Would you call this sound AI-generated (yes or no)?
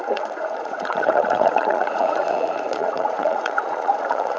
yes